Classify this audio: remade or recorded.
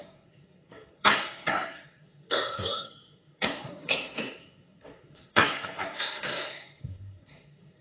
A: remade